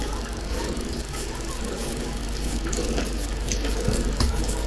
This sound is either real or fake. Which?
fake